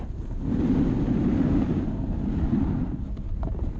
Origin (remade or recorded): recorded